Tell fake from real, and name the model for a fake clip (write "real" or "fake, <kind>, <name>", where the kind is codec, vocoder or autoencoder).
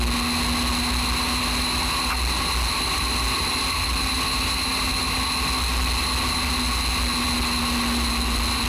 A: real